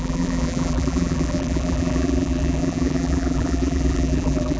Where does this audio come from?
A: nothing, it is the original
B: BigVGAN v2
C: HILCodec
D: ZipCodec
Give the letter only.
B